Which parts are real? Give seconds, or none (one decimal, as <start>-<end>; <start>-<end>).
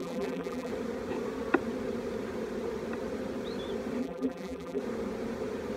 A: 0.7-4.0; 4.8-5.8